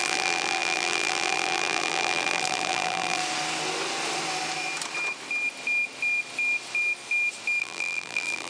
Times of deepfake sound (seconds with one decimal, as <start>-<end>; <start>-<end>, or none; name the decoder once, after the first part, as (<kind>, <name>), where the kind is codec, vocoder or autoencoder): 0.0-3.2 (vocoder, BigVGAN v2); 7.6-8.5